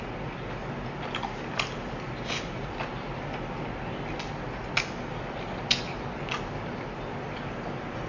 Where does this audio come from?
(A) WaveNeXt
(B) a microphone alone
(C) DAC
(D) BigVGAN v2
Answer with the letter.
B